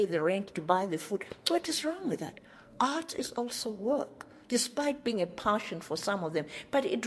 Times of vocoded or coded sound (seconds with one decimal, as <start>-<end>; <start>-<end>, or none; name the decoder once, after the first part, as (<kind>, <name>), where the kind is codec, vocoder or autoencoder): 0.0-5.3 (codec, SNAC)